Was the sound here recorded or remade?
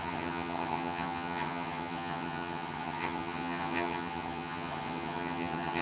remade